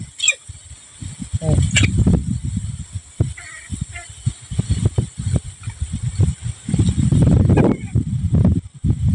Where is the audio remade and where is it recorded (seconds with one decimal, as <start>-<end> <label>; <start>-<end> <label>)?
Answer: 0.0-9.1 recorded